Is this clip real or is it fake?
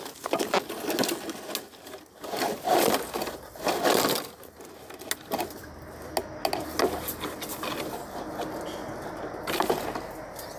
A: real